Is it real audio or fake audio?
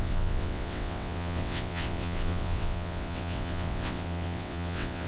fake